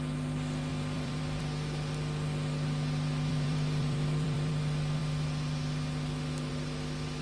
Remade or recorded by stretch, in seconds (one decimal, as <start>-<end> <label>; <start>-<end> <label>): 0.0-0.7 recorded; 0.7-1.4 remade; 1.4-3.3 recorded; 3.3-4.5 remade; 4.5-7.2 recorded

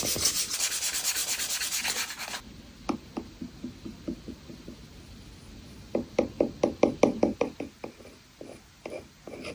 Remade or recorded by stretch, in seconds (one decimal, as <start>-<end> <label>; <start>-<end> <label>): 0.0-9.5 recorded

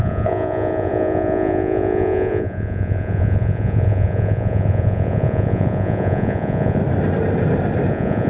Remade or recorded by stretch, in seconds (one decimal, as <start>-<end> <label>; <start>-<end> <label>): 0.0-6.8 remade; 6.8-7.9 recorded; 7.9-8.3 remade

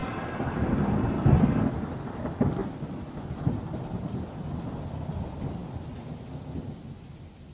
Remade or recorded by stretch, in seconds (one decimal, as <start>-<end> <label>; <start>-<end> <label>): 0.0-2.6 remade; 2.6-4.0 recorded; 4.0-5.6 remade; 5.6-6.7 recorded; 6.7-7.5 remade

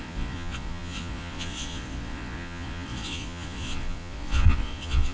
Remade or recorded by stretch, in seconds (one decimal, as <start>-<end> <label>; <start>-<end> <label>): 0.0-5.1 remade

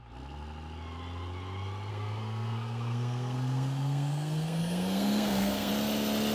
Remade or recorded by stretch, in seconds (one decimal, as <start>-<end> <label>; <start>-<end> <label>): 0.0-1.9 recorded; 1.9-5.7 remade; 5.7-6.3 recorded

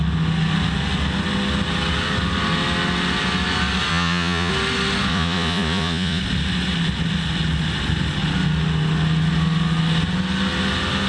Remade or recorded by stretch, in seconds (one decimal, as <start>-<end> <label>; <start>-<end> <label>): 0.0-3.9 recorded; 3.9-4.5 remade; 4.5-5.1 recorded; 5.1-6.2 remade; 6.2-11.1 recorded

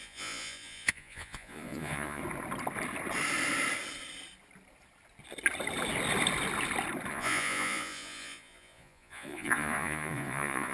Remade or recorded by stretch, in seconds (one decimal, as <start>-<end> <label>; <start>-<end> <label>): 0.0-2.2 remade; 2.2-7.1 recorded; 7.1-10.7 remade